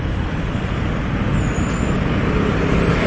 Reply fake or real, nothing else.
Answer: real